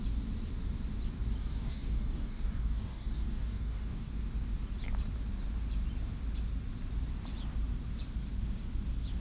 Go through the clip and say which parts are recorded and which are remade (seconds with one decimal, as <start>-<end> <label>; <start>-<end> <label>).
0.0-1.4 recorded; 1.4-4.1 remade; 4.1-9.2 recorded